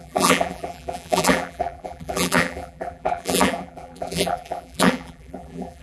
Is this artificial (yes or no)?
yes